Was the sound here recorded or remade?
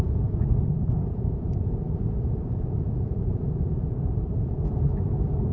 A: remade